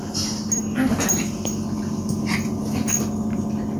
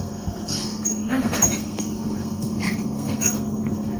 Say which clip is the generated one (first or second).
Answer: second